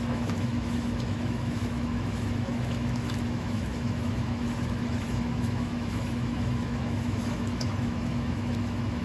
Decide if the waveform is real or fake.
fake